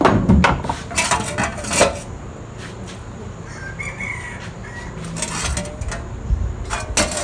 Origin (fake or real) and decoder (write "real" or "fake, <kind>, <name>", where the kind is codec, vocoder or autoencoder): real